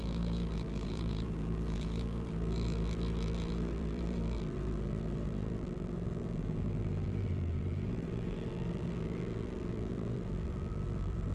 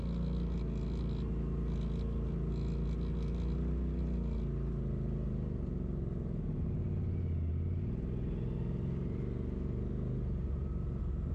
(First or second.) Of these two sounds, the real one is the second